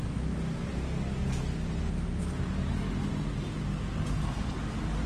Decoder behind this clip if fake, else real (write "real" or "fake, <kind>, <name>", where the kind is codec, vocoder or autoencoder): real